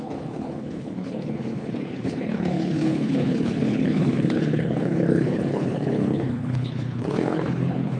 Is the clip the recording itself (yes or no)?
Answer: no